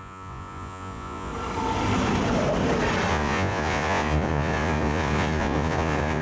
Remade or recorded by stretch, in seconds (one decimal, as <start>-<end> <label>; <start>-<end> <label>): 0.0-1.3 remade; 1.3-3.1 recorded; 3.1-6.2 remade